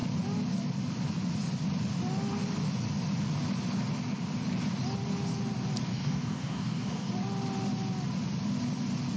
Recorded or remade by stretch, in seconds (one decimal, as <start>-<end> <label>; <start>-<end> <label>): 0.0-5.9 recorded; 5.9-7.1 remade; 7.1-9.2 recorded